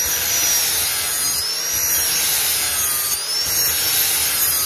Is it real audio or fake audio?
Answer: real